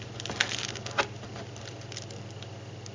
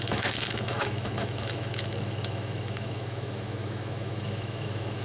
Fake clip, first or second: second